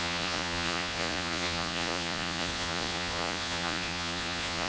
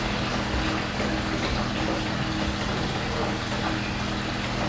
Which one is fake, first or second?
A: first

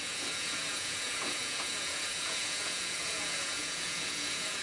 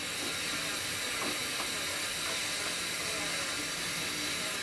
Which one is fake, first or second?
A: first